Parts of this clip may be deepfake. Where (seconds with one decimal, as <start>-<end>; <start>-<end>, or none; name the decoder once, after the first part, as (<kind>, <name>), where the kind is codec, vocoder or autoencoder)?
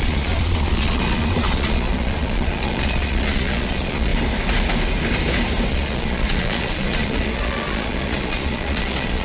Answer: 0.0-4.1 (vocoder, Vocos); 5.7-9.2